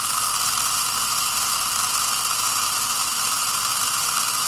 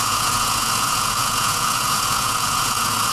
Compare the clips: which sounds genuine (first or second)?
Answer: first